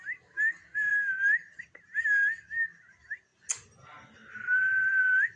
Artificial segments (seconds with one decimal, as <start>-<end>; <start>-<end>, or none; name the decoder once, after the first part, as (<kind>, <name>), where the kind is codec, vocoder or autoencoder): none